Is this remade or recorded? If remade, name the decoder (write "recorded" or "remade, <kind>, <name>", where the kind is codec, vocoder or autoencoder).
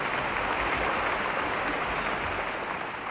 recorded